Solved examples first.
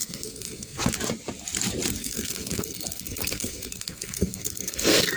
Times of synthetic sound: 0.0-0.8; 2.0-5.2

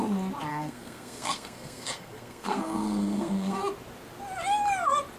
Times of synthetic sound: 0.5-3.6

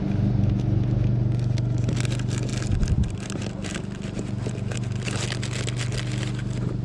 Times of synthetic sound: none

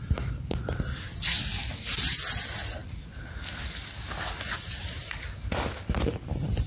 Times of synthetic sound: none

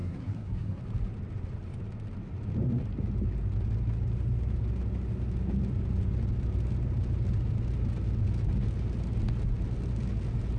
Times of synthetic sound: 0.0-0.8